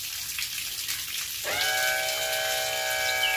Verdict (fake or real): real